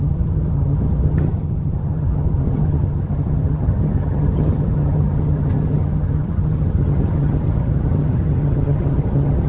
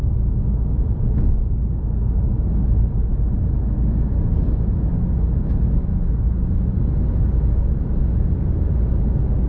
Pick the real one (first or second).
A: second